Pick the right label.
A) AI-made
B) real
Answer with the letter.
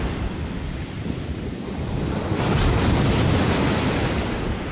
B